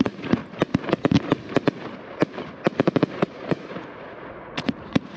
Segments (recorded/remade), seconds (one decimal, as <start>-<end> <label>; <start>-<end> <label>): 0.0-0.4 remade; 0.4-3.1 recorded; 3.1-5.2 remade

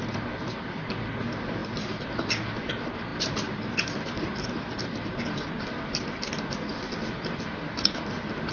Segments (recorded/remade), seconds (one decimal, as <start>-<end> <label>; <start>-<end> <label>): 0.0-8.5 recorded

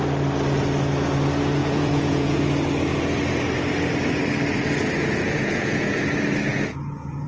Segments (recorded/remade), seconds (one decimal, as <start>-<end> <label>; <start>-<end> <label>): 0.0-1.6 recorded; 1.6-2.4 remade; 2.4-5.0 recorded; 5.0-5.9 remade; 5.9-6.5 recorded; 6.5-7.3 remade

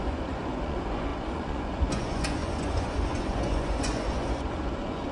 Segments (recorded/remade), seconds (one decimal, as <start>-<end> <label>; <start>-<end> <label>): 0.0-5.1 remade

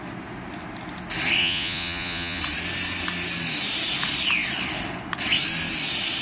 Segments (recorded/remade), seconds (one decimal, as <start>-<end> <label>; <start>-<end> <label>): 0.0-1.4 recorded; 1.4-2.4 remade; 2.4-6.2 recorded

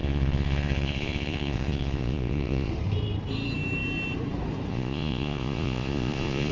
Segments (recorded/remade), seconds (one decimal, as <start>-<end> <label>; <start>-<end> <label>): 0.0-2.7 remade; 2.7-4.7 recorded; 4.7-6.5 remade